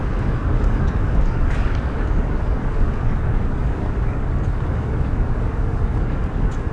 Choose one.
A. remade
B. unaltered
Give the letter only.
A